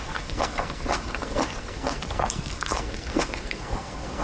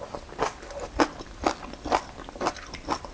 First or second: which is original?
second